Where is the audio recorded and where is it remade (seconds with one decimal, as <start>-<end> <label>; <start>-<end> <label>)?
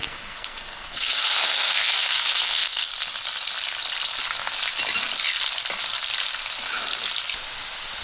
0.0-2.9 remade; 2.9-8.0 recorded